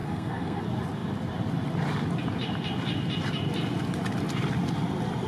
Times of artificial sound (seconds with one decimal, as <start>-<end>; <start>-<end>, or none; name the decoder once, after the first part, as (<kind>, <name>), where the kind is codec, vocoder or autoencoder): 0.0-0.6 (codec, SNAC)